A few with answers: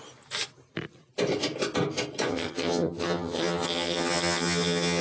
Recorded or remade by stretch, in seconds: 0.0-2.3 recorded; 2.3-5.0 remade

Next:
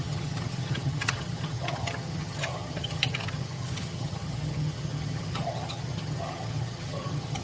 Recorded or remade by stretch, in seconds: 0.0-7.4 remade

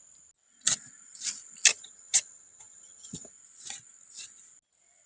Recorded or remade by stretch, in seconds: 0.0-1.7 recorded; 1.7-3.3 remade; 3.3-5.1 recorded